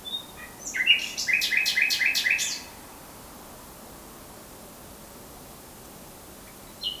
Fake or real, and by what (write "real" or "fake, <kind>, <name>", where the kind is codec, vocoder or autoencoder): real